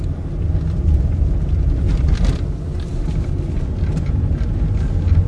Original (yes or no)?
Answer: yes